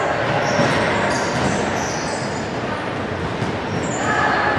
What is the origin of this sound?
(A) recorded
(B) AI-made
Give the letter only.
A